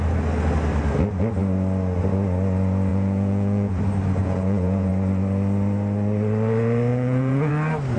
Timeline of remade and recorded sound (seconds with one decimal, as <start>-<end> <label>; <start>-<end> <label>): 0.0-2.9 recorded; 2.9-3.8 remade; 3.8-4.2 recorded; 4.2-4.9 remade; 4.9-6.9 recorded; 6.9-7.5 remade; 7.5-8.0 recorded